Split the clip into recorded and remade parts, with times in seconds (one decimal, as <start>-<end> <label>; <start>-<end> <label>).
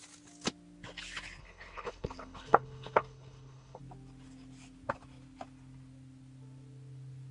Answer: 0.0-1.4 recorded; 1.4-3.8 remade; 3.8-7.3 recorded